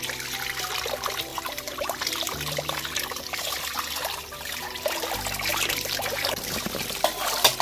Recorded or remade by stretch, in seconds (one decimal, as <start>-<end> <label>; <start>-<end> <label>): 0.0-1.3 recorded; 1.3-5.1 remade; 5.1-5.5 recorded; 5.5-6.4 remade; 6.4-7.6 recorded